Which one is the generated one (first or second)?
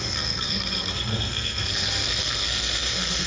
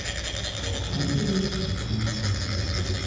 first